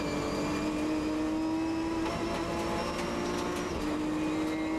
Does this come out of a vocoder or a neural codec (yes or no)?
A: no